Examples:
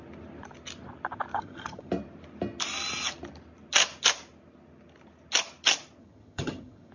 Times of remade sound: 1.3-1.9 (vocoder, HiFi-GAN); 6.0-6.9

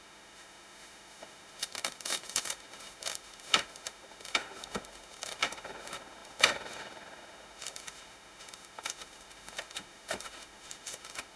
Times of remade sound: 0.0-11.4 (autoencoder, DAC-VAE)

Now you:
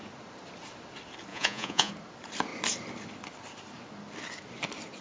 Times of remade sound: 1.3-1.9 (vocoder, Vocos)